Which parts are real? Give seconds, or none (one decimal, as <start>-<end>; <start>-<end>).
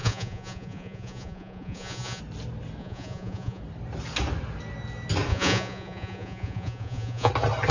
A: 2.2-2.8; 3.6-5.3; 7.3-7.7